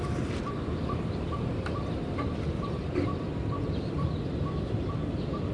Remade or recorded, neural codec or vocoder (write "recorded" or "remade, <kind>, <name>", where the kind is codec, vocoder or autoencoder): recorded